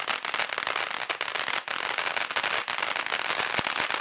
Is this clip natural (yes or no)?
yes